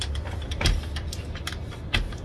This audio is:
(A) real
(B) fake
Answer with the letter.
A